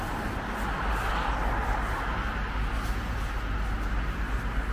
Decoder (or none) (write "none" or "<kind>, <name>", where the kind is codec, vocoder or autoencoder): none